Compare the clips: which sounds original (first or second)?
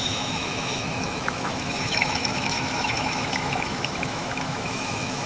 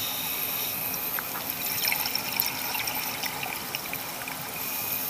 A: second